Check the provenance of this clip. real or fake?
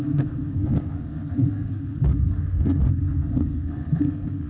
fake